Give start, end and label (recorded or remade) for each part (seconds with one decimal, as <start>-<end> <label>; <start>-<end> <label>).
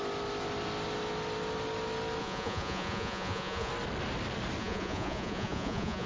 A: 0.0-2.2 recorded; 2.2-3.7 remade; 3.7-4.6 recorded; 4.6-6.1 remade